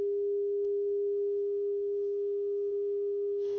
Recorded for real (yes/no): no